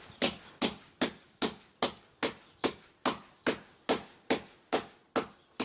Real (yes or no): yes